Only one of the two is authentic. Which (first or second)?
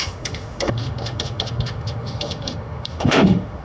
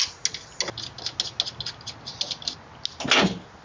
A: second